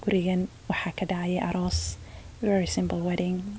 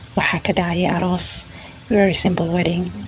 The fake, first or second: second